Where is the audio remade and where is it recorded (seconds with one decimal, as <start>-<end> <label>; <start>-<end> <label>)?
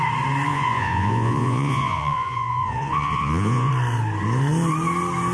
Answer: 0.0-0.5 recorded; 0.5-3.7 remade; 3.7-5.3 recorded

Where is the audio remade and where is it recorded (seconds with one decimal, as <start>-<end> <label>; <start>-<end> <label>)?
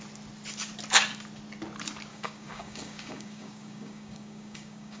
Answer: 0.0-2.1 recorded; 2.1-5.0 remade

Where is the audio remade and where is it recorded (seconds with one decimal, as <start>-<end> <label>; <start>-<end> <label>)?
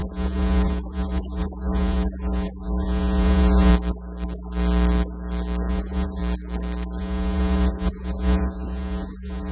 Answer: 0.0-3.7 remade; 3.7-5.7 recorded; 5.7-6.2 remade; 6.2-7.0 recorded; 7.0-9.5 remade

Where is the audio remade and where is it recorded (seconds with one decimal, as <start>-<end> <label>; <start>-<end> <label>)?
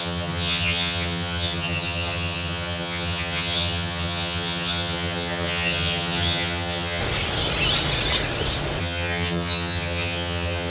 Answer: 0.0-7.0 remade; 7.0-8.8 recorded; 8.8-10.7 remade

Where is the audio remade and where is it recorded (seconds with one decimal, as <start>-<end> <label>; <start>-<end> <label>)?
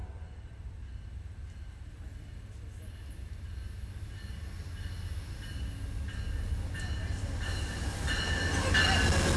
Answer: 0.0-9.4 recorded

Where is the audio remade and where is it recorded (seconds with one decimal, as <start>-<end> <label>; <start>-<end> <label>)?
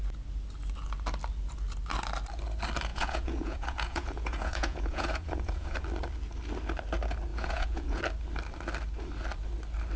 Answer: 0.0-2.9 recorded; 2.9-5.8 remade; 5.8-7.3 recorded; 7.3-8.0 remade; 8.0-10.0 recorded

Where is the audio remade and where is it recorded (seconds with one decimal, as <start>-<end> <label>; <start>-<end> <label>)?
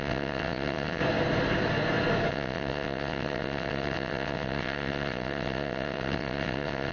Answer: 0.0-1.0 remade; 1.0-2.3 recorded; 2.3-6.9 remade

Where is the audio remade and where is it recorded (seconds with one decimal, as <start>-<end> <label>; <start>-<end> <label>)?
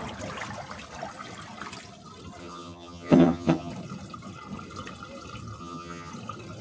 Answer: 0.0-2.4 recorded; 2.4-3.7 remade; 3.7-5.6 recorded; 5.6-6.1 remade; 6.1-6.6 recorded